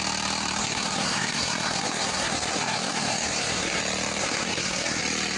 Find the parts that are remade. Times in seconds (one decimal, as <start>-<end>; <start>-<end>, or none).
0.6-3.8; 4.2-5.0